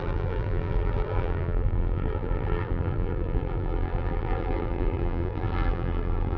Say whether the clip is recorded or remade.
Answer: remade